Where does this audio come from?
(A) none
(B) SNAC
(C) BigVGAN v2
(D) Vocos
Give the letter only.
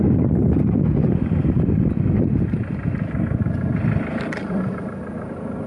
A